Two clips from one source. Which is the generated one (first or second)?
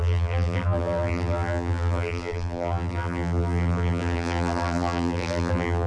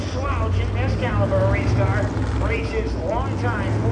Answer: first